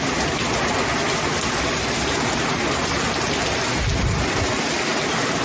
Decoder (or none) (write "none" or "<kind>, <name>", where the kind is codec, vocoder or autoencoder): none